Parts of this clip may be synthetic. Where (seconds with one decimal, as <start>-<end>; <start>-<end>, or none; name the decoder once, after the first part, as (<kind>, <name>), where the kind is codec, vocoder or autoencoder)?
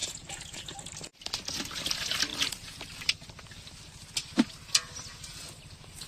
0.0-0.6 (vocoder, Vocos)